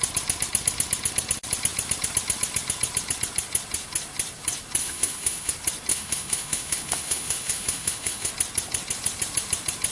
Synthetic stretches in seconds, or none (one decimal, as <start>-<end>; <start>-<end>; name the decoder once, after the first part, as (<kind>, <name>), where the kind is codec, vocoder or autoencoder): 4.8-5.5 (autoencoder, DAC-VAE); 5.9-8.3